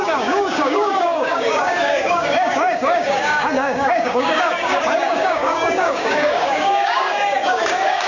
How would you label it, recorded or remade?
remade